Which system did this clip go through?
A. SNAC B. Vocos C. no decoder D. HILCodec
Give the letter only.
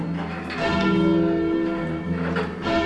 C